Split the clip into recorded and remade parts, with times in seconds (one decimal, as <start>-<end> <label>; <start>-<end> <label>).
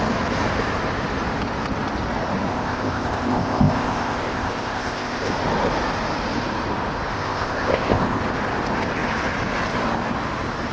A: 0.0-2.5 recorded; 2.5-5.3 remade; 5.3-7.1 recorded; 7.1-8.2 remade; 8.2-10.7 recorded